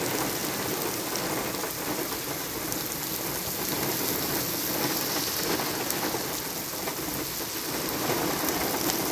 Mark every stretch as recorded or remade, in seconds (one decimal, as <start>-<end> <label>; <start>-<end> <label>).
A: 0.0-9.1 recorded